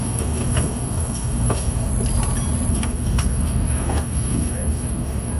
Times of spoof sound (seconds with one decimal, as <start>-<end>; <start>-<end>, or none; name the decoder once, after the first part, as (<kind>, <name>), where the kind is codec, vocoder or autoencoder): 0.0-1.9 (codec, DAC); 2.7-5.4